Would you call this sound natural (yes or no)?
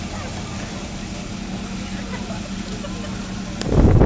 yes